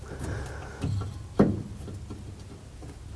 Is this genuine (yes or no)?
yes